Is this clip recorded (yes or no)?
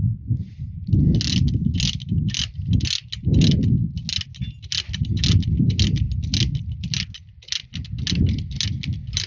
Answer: yes